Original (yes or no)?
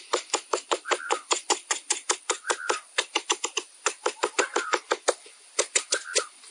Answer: yes